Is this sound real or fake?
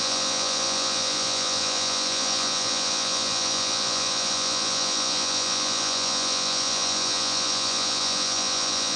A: fake